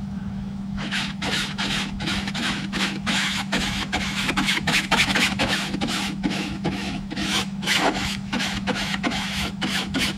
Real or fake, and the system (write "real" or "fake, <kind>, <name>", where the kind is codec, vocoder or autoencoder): fake, autoencoder, DAC-VAE